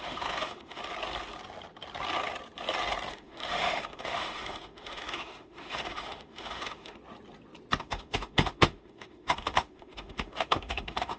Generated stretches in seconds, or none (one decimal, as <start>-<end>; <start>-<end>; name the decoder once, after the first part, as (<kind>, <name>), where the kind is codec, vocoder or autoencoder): 0.0-0.8 (autoencoder, DAC-VAE); 3.1-7.0; 7.8-11.2